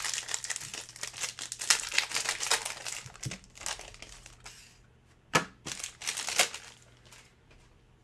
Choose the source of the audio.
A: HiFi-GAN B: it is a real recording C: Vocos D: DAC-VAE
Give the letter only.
B